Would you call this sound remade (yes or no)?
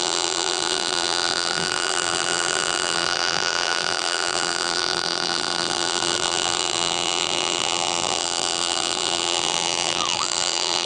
yes